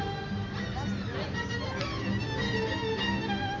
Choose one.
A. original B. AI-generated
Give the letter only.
A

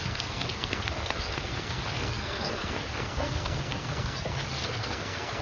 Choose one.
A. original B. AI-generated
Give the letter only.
B